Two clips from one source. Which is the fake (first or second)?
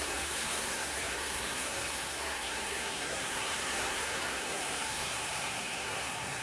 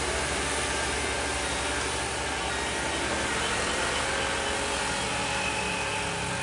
first